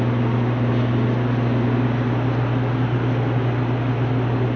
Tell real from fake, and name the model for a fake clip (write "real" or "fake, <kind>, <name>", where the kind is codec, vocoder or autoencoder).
real